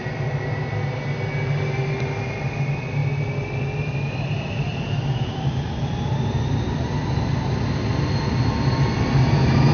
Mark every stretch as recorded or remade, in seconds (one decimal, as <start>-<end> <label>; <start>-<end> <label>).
0.0-9.7 recorded